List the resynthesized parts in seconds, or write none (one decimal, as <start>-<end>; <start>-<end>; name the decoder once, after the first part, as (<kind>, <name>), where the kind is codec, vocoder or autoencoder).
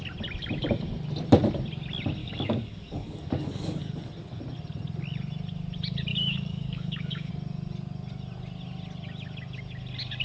2.2-3.8 (codec, DAC); 6.1-7.3